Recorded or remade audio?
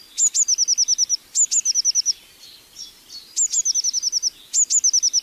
recorded